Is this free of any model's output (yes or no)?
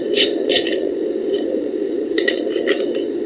no